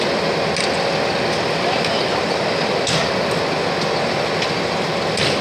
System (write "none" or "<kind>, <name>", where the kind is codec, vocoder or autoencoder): none